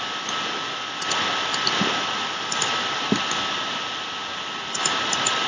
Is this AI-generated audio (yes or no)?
no